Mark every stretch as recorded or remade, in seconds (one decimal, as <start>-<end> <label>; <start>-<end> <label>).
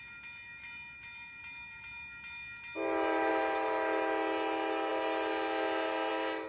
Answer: 0.0-6.5 recorded